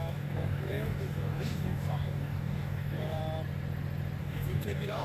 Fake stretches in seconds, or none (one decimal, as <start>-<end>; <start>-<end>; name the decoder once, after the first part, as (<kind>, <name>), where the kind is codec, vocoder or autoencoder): 0.0-3.2 (codec, DAC); 4.2-5.0